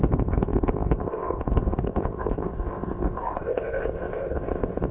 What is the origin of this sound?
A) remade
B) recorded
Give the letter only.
A